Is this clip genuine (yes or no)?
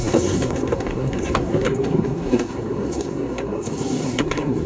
no